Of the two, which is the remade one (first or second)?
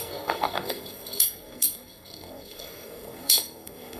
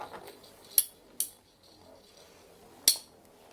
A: first